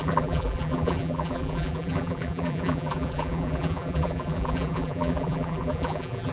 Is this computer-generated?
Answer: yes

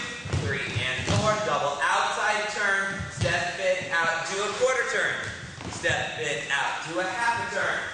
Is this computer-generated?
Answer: no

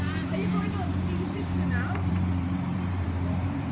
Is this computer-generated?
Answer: yes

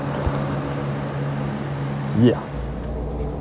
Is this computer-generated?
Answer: no